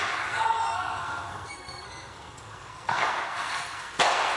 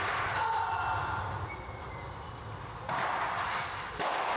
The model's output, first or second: first